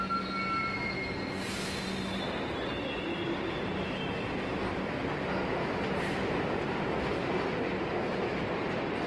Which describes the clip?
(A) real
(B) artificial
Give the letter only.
A